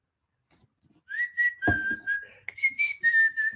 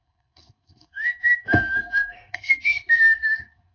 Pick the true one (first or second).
first